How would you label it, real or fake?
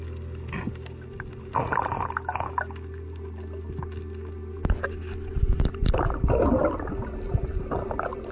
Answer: real